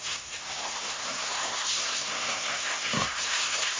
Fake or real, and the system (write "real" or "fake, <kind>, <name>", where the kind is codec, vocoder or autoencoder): fake, codec, SNAC